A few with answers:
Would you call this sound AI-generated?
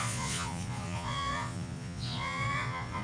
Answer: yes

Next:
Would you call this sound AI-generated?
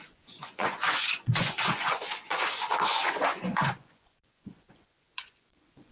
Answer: yes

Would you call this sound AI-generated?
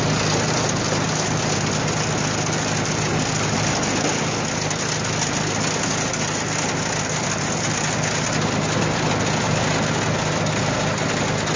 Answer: no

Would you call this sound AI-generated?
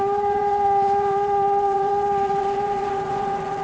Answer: yes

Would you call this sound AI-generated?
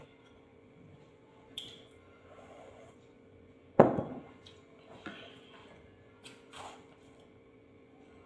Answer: yes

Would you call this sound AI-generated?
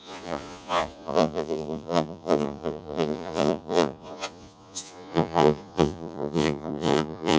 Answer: yes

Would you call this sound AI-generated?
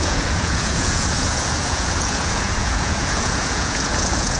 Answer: yes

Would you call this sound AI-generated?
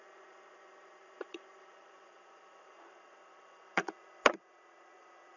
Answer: yes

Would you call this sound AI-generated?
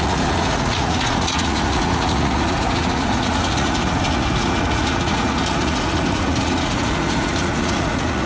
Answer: yes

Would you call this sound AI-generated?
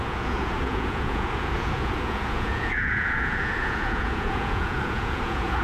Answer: yes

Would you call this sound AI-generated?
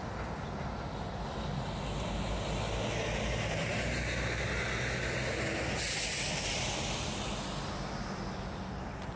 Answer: no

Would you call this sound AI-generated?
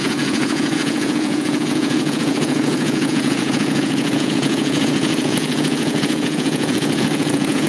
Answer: yes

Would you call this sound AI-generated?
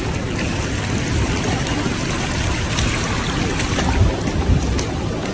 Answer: no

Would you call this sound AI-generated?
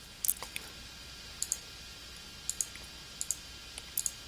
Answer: no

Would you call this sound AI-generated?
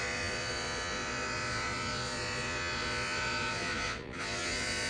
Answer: yes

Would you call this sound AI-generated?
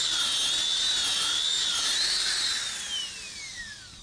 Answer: no